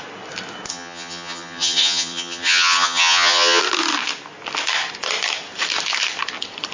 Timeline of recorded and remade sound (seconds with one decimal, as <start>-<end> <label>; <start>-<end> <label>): 0.0-0.7 recorded; 0.7-3.6 remade; 3.6-6.7 recorded